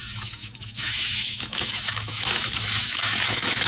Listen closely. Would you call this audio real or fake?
fake